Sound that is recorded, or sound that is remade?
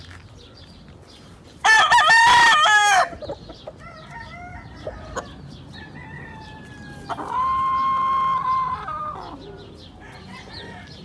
recorded